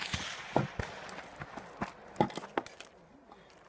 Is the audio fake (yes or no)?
no